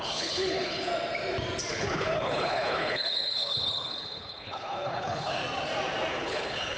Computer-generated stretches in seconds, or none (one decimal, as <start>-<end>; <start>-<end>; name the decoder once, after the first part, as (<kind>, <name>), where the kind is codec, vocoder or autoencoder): 0.0-0.9 (codec, HILCodec); 1.7-5.4; 6.1-6.8